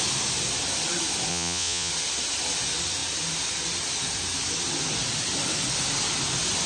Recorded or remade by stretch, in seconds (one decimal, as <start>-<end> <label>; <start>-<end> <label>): 0.0-1.3 recorded; 1.3-1.9 remade; 1.9-6.7 recorded